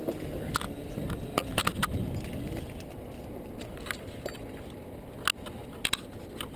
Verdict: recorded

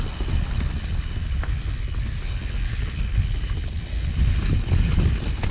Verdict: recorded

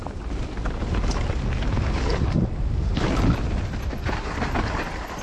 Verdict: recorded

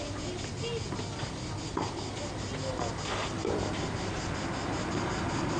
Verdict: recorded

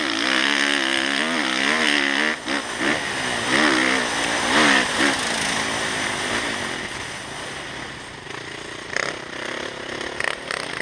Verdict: recorded